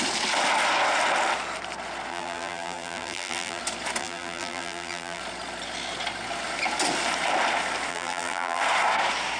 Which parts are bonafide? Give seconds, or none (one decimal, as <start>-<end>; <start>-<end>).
0.0-2.1; 3.6-4.0; 5.2-7.9; 8.6-9.4